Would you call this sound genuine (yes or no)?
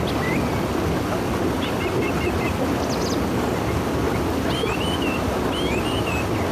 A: yes